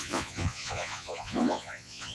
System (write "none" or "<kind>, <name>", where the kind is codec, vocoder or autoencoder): vocoder, Vocos